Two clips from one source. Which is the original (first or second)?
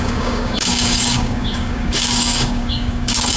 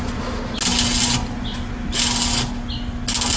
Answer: second